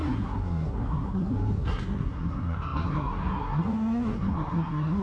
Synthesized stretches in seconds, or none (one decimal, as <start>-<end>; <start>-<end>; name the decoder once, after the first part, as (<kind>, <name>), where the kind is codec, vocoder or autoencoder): 0.0-5.0 (codec, SNAC)